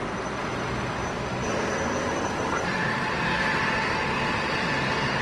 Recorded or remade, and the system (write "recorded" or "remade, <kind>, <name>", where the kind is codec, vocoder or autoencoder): recorded